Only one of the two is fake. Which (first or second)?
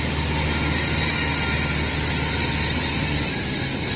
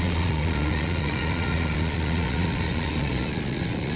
second